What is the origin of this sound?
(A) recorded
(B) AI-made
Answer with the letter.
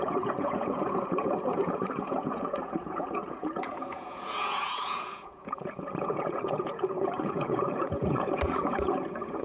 B